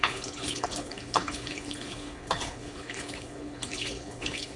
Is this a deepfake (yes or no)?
yes